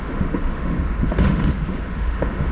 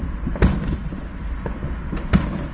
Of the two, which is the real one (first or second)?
second